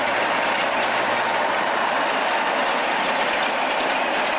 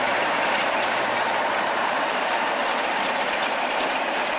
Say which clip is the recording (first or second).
first